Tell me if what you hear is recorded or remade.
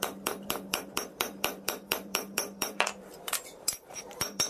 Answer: remade